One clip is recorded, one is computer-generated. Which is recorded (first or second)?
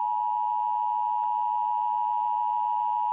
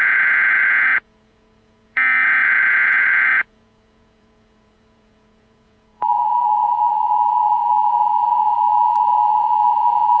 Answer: first